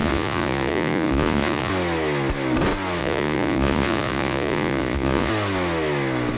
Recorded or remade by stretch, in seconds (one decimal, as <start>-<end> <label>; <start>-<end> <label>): 0.0-1.7 remade; 1.7-3.0 recorded; 3.0-5.3 remade; 5.3-6.4 recorded